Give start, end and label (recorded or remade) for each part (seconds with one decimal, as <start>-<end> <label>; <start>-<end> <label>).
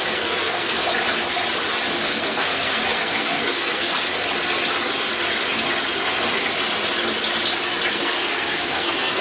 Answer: 0.0-0.8 remade; 0.8-2.0 recorded; 2.0-4.1 remade; 4.1-7.9 recorded; 7.9-9.2 remade